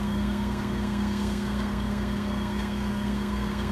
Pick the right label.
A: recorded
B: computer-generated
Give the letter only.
B